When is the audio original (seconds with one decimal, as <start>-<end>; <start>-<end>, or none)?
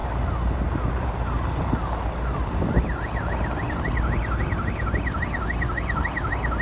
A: 0.0-6.6